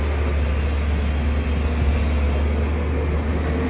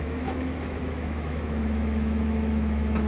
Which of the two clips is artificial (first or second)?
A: second